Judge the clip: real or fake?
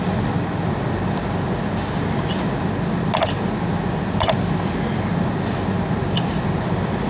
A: real